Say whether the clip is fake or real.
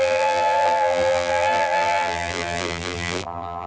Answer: fake